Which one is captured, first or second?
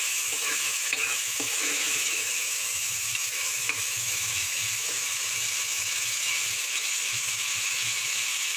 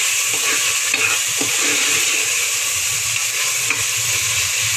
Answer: second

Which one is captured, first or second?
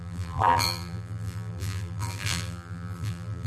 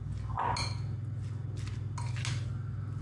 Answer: second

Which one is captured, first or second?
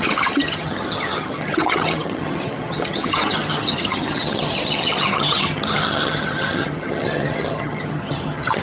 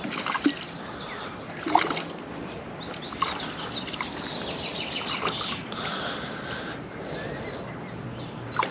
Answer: second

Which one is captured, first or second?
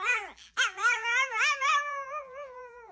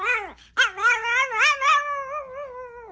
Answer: second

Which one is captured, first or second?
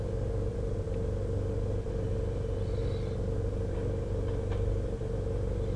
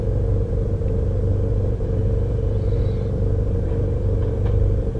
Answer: first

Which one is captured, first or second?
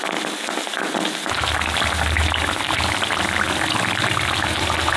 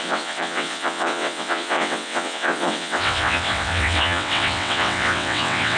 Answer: first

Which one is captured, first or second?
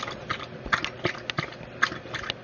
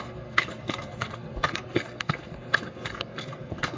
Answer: first